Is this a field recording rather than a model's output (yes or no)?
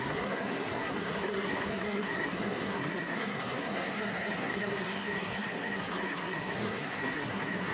no